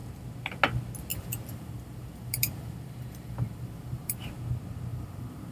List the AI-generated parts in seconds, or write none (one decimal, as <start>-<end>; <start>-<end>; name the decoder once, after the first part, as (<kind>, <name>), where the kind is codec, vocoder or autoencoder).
1.1-4.3 (vocoder, BigVGAN v2); 4.9-5.5